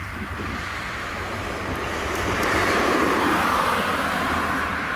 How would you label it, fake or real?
fake